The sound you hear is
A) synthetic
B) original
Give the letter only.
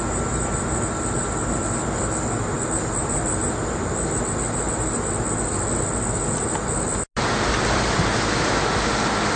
B